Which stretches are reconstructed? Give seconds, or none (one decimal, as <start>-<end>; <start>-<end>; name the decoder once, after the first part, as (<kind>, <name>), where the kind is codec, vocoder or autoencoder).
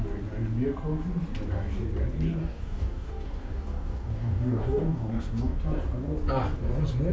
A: 2.4-5.6 (codec, DAC)